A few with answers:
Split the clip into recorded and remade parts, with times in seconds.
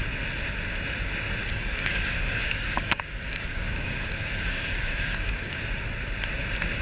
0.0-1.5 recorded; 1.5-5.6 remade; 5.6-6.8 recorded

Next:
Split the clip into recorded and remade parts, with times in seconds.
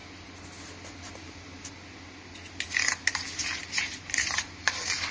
0.0-3.5 recorded; 3.5-5.1 remade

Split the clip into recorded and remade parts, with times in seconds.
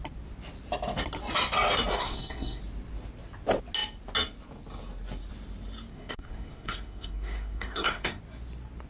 0.0-2.0 recorded; 2.0-2.6 remade; 2.6-5.9 recorded; 5.9-8.2 remade; 8.2-8.9 recorded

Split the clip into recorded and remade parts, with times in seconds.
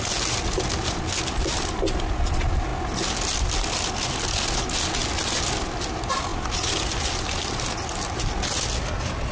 0.0-9.3 recorded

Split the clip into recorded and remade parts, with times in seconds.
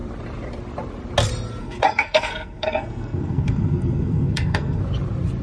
0.0-1.6 recorded; 1.6-4.8 remade; 4.8-5.4 recorded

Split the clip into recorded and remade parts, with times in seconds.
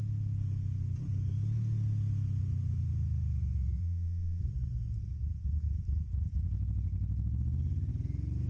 0.0-3.8 recorded; 3.8-4.4 remade; 4.4-8.5 recorded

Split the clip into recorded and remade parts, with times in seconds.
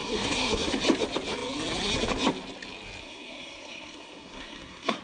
0.0-0.8 remade; 0.8-3.0 recorded; 3.0-5.0 remade